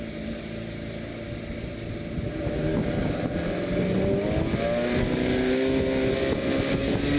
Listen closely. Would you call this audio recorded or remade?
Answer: recorded